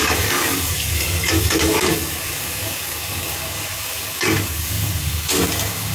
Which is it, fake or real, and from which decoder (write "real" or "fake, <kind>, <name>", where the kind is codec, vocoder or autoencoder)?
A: fake, codec, DAC